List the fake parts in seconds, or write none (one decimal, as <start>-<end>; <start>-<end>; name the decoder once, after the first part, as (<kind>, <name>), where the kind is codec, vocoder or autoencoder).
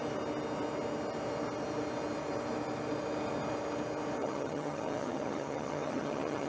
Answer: 4.2-6.5 (vocoder, HiFi-GAN)